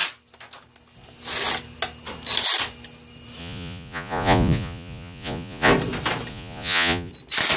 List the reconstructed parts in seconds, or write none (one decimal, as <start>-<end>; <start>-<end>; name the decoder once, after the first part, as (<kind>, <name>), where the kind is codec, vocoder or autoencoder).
3.4-5.7 (vocoder, Vocos); 6.3-7.1